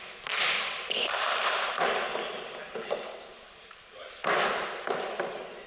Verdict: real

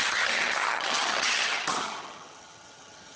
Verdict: fake